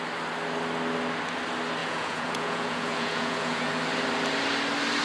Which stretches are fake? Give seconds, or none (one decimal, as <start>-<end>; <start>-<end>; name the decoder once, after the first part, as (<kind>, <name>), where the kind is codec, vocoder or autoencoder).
1.8-3.7 (vocoder, Vocos)